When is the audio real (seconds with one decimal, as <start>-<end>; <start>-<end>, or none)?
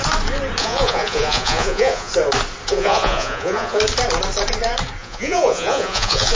0.0-0.6; 2.1-2.7; 3.8-5.0